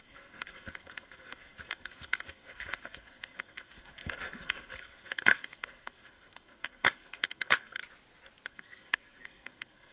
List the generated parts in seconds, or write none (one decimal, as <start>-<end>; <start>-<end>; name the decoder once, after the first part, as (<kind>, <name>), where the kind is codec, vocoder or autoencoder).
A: 0.0-7.8 (codec, SNAC); 8.5-9.9